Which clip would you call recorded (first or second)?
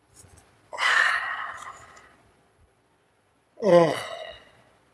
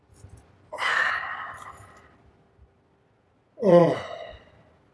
second